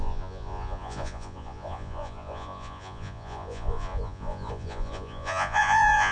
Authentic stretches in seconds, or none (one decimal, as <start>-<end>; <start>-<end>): none